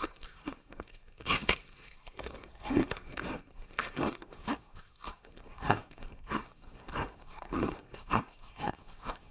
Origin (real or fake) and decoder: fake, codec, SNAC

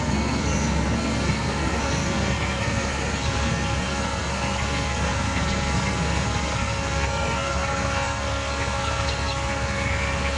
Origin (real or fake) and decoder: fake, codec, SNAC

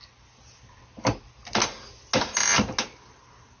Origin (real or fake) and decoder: real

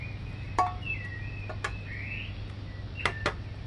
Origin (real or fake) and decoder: real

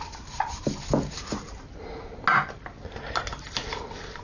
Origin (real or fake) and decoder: real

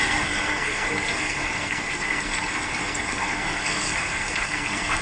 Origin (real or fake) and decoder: fake, codec, SNAC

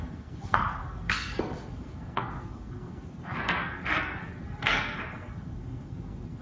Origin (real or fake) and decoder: fake, codec, SNAC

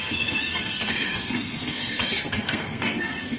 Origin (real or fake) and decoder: fake, codec, SNAC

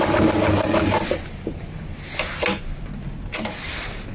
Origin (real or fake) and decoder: real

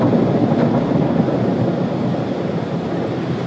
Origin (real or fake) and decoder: real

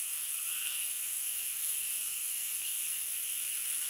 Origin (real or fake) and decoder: fake, codec, SNAC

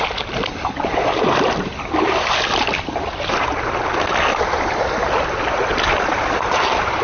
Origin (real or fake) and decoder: real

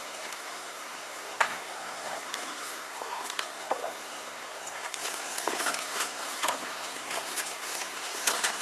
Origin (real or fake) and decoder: fake, codec, SNAC